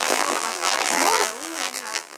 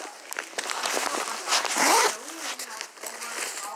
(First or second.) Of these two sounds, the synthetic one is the first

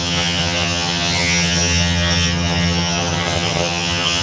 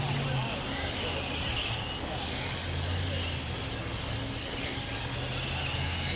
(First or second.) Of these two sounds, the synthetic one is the first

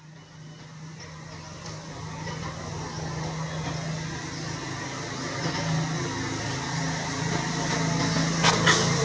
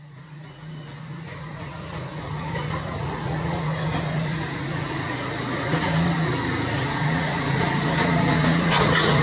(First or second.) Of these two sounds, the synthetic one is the second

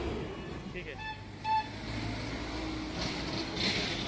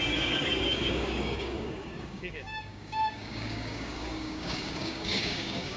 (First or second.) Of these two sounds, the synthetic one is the second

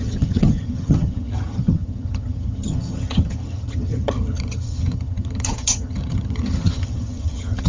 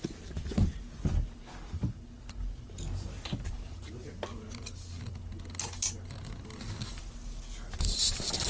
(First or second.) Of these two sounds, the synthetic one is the first